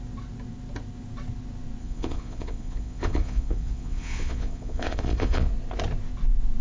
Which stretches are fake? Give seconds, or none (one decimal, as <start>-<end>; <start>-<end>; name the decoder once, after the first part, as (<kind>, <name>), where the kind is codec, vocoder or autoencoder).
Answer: 1.8-5.5 (vocoder, Vocos)